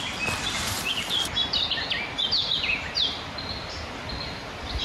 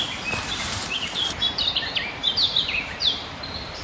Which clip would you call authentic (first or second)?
first